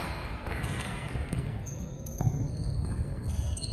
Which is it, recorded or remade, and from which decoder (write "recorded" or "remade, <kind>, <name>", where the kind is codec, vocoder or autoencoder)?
remade, codec, SNAC